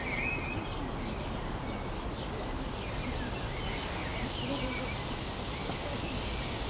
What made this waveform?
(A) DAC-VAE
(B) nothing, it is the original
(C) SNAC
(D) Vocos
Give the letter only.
B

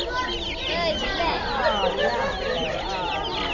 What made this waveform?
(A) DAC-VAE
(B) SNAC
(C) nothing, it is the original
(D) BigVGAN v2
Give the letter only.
C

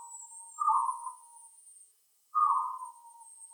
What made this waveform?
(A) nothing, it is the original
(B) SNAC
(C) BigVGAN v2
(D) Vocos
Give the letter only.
D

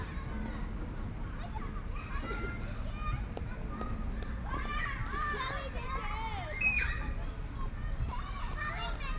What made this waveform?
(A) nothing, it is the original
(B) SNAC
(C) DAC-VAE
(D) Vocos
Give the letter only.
A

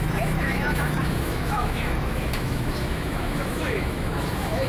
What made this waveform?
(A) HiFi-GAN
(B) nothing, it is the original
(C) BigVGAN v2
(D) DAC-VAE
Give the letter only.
D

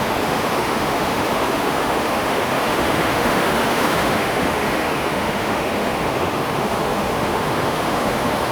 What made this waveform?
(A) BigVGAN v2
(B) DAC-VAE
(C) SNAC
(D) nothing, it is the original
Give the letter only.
B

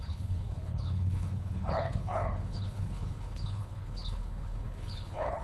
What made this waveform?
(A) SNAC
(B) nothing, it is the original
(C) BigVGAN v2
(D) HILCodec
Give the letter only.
D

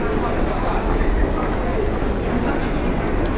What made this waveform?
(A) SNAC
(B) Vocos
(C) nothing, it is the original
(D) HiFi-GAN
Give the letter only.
C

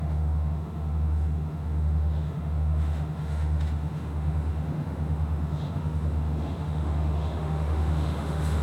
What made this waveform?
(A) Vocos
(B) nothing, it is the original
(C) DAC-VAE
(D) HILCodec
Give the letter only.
C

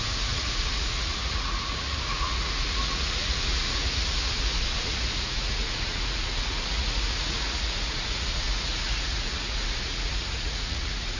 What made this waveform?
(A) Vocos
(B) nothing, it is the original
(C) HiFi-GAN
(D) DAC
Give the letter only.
A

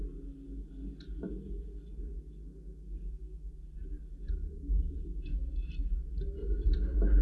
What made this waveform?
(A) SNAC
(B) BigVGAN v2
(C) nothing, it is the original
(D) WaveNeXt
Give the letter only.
C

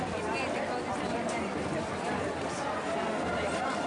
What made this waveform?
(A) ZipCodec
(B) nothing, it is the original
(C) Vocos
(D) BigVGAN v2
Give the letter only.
D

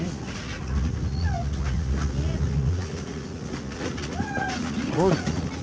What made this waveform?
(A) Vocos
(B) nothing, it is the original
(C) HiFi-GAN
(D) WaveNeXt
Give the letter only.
A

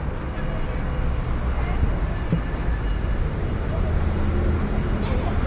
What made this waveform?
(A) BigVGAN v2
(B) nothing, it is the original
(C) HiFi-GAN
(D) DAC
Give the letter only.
B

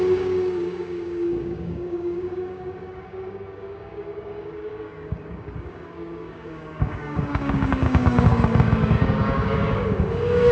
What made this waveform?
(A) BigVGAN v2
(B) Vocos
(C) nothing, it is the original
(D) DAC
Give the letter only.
D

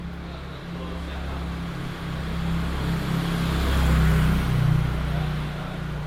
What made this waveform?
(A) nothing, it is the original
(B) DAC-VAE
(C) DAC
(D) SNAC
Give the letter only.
A